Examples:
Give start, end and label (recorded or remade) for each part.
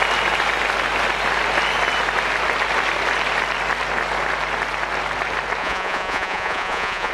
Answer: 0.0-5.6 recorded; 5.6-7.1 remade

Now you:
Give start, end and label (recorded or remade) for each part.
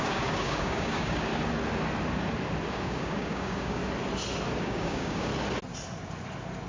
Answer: 0.0-1.3 remade; 1.3-2.7 recorded; 2.7-3.8 remade; 3.8-4.6 recorded; 4.6-5.3 remade; 5.3-6.7 recorded